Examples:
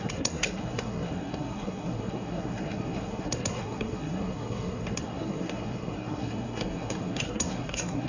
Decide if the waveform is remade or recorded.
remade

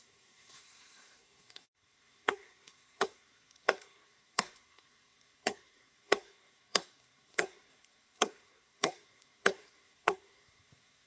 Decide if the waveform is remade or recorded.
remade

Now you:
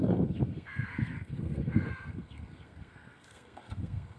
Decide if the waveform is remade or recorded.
remade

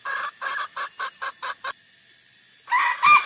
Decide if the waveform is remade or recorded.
recorded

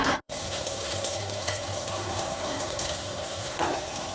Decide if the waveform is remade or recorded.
remade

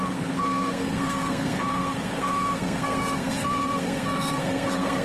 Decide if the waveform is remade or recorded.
remade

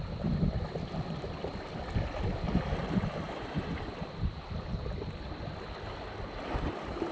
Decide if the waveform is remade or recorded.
recorded